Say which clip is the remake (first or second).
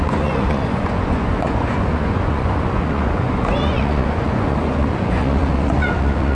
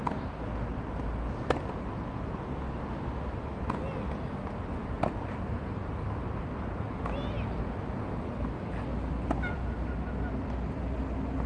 first